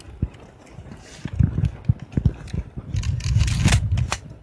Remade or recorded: recorded